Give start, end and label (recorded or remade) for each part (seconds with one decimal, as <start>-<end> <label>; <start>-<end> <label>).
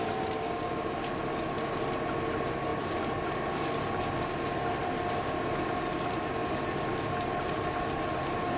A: 0.0-8.6 recorded